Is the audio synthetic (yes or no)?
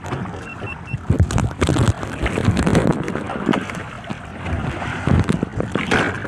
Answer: yes